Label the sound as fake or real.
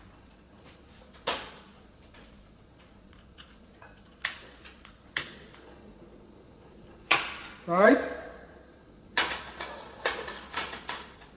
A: fake